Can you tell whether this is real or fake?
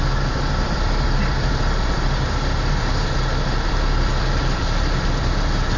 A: fake